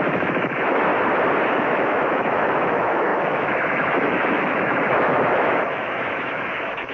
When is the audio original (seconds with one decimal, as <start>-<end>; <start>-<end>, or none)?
0.9-1.5